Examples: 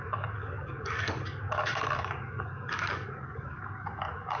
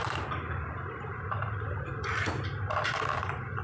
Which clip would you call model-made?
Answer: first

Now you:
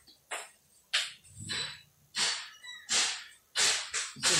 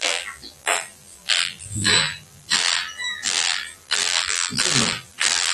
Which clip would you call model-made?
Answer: second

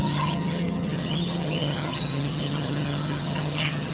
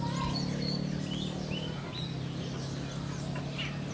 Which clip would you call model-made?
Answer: first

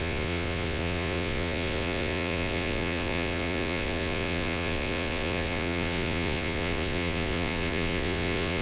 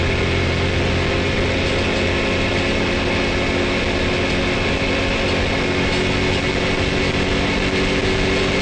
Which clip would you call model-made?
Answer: first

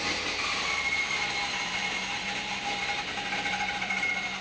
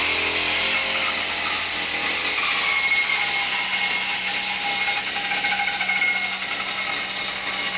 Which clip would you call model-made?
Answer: first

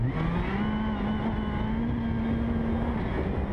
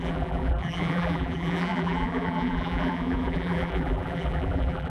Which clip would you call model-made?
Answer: second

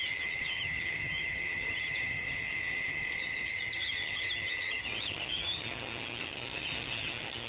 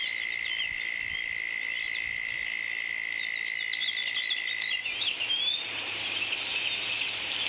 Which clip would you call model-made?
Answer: first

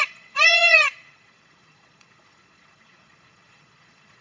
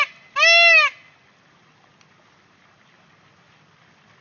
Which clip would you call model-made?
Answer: first